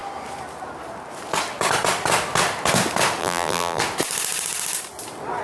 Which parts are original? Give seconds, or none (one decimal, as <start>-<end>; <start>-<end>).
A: 0.0-3.2; 3.8-5.4